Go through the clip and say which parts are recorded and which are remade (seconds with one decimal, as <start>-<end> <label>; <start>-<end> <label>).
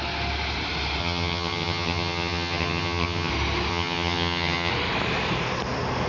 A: 0.0-1.0 recorded; 1.0-3.3 remade; 3.3-3.7 recorded; 3.7-4.7 remade; 4.7-6.1 recorded